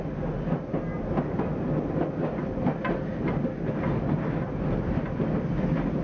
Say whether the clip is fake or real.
real